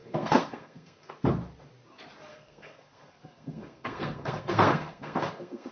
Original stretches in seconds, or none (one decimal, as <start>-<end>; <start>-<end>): 1.1-2.3